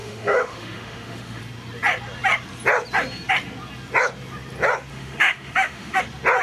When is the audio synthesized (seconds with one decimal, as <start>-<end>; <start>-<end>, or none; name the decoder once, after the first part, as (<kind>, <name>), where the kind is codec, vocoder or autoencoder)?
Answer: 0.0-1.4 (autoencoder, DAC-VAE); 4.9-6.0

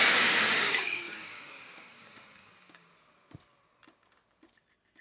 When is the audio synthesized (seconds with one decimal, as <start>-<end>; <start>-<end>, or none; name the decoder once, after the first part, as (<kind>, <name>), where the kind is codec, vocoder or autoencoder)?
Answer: 0.6-2.9 (codec, DAC)

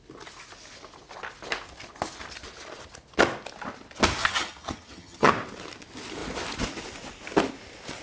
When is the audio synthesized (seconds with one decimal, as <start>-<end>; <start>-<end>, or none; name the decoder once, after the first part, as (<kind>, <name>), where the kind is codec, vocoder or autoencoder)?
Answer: 4.2-5.3 (vocoder, HiFi-GAN)

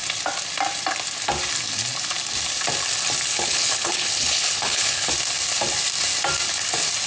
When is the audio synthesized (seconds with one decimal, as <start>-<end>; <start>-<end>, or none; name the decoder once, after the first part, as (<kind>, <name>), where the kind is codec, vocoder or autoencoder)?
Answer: 3.3-5.1 (codec, HILCodec)